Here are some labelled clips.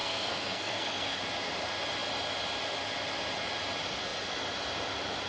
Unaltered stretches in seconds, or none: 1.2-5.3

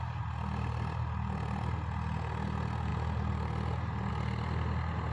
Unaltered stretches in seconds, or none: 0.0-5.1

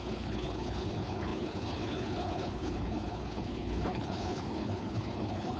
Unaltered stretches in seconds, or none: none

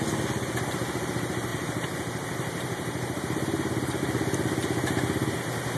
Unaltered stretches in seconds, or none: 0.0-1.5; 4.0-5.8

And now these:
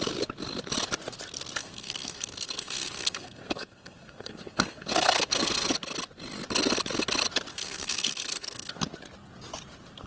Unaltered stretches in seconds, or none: 0.0-1.6; 5.7-7.5; 8.7-10.1

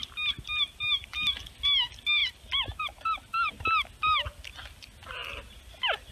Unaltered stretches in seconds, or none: 0.0-2.2; 3.5-6.1